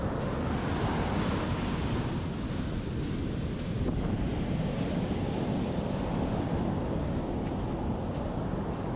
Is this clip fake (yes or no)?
no